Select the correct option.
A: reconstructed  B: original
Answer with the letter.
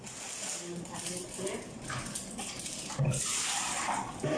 B